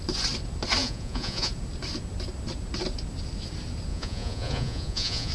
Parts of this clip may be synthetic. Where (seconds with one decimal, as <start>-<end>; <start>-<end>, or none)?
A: 0.8-1.5; 3.9-5.3